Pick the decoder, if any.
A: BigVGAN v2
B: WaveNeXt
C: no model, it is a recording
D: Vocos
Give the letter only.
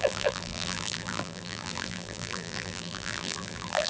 A